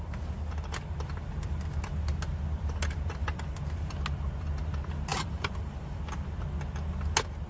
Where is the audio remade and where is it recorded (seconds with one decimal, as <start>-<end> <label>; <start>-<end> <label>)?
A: 0.0-5.1 recorded; 5.1-6.0 remade; 6.0-7.5 recorded